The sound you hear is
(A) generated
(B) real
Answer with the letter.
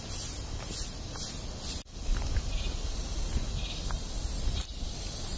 B